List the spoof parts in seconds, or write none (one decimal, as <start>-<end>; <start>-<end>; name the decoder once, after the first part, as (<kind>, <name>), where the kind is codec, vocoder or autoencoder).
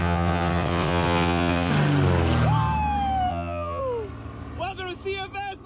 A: 0.0-1.7 (vocoder, WaveNeXt); 3.3-3.8